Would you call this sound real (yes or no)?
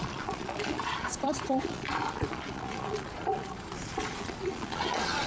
no